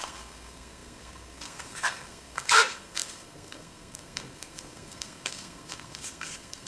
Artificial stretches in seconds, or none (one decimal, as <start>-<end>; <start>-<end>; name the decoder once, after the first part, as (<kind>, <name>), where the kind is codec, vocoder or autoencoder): 0.0-6.7 (codec, SNAC)